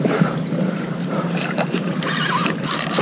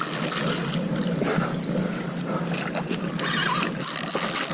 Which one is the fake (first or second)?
first